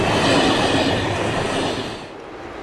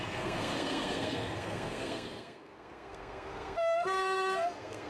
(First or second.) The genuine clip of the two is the first